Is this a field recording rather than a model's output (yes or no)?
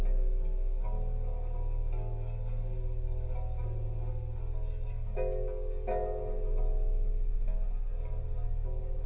yes